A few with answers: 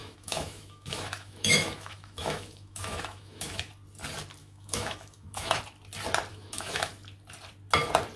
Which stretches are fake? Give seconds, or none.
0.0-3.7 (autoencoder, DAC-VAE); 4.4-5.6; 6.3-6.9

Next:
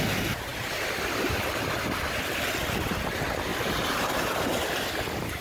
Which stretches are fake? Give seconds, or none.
0.5-2.2 (vocoder, BigVGAN v2)

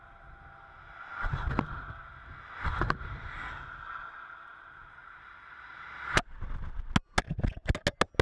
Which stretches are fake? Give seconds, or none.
4.8-5.9 (vocoder, BigVGAN v2)

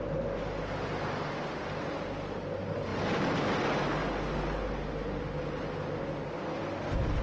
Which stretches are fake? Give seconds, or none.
none

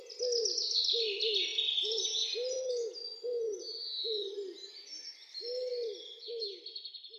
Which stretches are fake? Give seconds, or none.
none